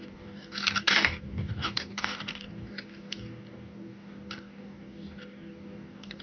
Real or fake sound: fake